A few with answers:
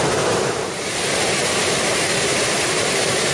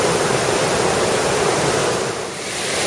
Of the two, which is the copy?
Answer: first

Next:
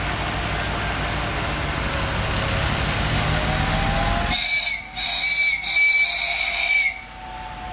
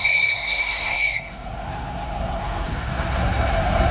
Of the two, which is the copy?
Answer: second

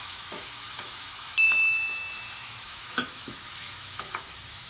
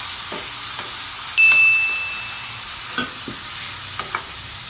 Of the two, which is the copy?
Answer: first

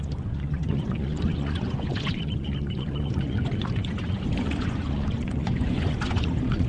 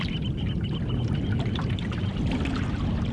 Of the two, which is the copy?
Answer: first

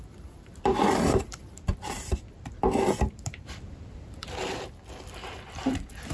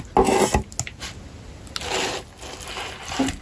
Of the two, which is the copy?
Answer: first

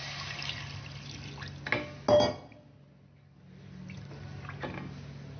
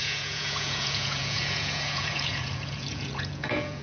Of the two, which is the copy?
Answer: second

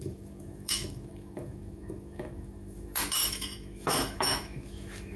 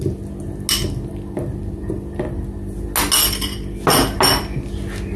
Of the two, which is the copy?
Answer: first